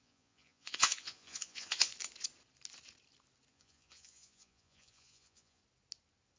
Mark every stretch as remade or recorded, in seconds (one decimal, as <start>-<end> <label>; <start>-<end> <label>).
0.0-1.9 remade; 1.9-3.5 recorded; 3.5-5.6 remade; 5.6-6.4 recorded